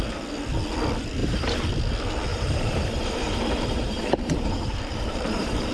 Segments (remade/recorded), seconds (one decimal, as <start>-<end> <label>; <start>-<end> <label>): 0.0-1.2 recorded; 1.2-1.7 remade; 1.7-2.3 recorded; 2.3-5.7 remade